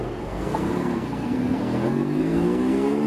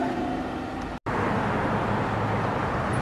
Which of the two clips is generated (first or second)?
first